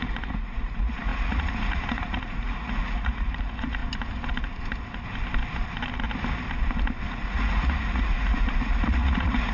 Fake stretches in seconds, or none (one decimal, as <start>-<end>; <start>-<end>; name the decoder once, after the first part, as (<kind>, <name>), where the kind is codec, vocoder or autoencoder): 0.0-3.8 (vocoder, Vocos); 7.1-9.5

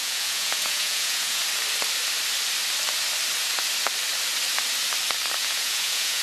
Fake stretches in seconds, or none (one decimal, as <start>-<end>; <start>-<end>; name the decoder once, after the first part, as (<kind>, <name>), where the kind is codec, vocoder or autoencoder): 0.0-1.4 (vocoder, Vocos); 5.4-6.2